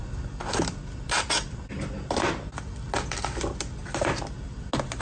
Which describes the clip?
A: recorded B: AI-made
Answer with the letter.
A